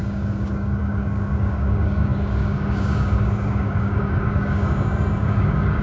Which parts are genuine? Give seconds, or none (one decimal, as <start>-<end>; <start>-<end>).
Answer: none